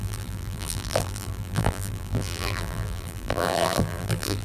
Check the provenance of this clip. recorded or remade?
remade